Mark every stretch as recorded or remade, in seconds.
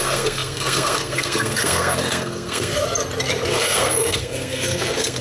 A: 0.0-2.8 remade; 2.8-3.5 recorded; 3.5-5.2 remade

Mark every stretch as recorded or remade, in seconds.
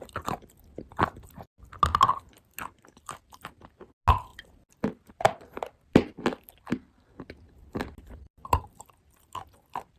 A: 0.0-10.0 recorded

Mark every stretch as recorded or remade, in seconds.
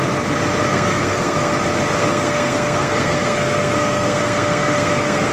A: 0.0-0.6 recorded; 0.6-1.5 remade; 1.5-2.0 recorded; 2.0-5.3 remade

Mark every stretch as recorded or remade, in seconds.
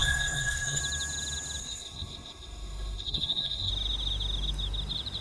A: 0.0-0.8 remade; 0.8-1.6 recorded; 1.6-3.7 remade; 3.7-5.2 recorded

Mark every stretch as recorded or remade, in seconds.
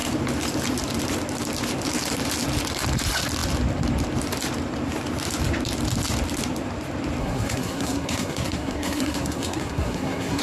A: 0.0-7.2 recorded; 7.2-10.4 remade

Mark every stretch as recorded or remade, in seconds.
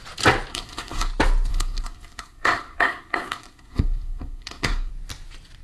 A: 0.0-0.5 recorded; 0.5-1.1 remade; 1.1-1.5 recorded; 1.5-4.9 remade; 4.9-5.6 recorded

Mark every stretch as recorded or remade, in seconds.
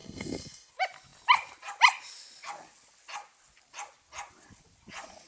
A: 0.0-0.7 remade; 0.7-5.3 recorded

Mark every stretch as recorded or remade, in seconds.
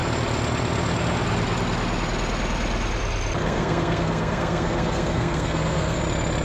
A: 0.0-3.4 recorded; 3.4-6.0 remade; 6.0-6.4 recorded